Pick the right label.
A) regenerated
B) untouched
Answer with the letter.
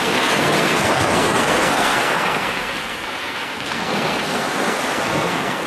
A